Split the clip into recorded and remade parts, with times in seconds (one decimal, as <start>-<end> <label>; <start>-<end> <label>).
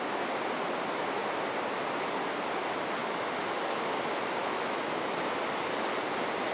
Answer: 0.0-3.0 recorded; 3.0-3.9 remade; 3.9-4.4 recorded; 4.4-5.2 remade; 5.2-6.5 recorded